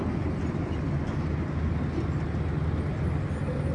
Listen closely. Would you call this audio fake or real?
real